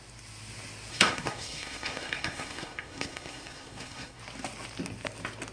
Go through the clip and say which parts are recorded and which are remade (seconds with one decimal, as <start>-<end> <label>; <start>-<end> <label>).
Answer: 0.0-0.9 recorded; 0.9-4.2 remade; 4.2-5.5 recorded